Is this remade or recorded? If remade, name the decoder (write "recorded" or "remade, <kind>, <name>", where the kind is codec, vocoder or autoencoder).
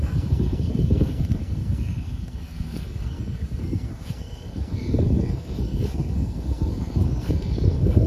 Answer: remade, codec, SNAC